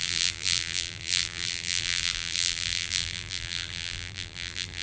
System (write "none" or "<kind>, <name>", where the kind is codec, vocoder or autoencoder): vocoder, BigVGAN v2